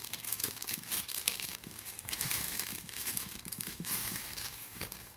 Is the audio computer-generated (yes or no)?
yes